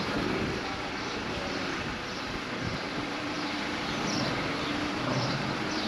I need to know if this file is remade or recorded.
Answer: remade